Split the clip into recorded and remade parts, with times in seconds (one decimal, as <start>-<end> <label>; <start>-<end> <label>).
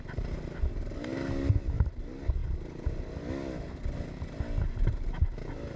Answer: 0.0-5.8 recorded